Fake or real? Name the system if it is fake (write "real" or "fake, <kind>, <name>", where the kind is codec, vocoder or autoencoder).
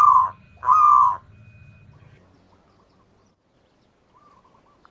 real